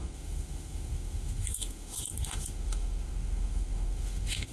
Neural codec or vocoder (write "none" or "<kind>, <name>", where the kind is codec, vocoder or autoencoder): autoencoder, DAC-VAE